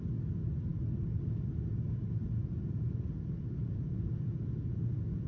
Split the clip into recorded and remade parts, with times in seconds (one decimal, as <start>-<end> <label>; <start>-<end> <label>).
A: 0.0-2.2 recorded; 2.2-3.0 remade; 3.0-3.6 recorded; 3.6-5.3 remade